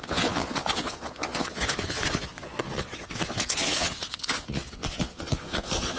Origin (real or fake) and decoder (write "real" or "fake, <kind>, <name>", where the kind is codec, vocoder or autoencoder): fake, vocoder, Vocos